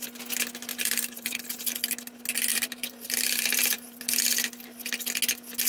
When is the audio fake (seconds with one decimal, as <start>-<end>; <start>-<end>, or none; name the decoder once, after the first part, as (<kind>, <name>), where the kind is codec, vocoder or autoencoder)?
0.7-1.3 (vocoder, BigVGAN v2); 2.5-4.0